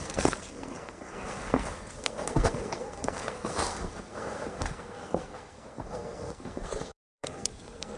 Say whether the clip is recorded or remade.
remade